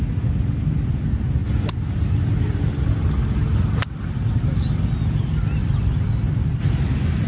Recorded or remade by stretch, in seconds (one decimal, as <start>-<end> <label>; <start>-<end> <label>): 0.0-7.3 recorded